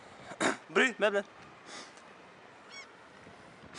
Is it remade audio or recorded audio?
recorded